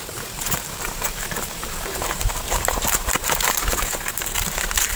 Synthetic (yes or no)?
yes